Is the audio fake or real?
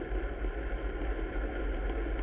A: real